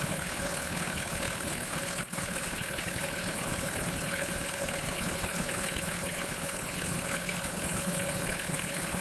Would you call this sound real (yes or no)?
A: no